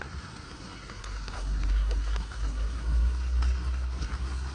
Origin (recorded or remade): remade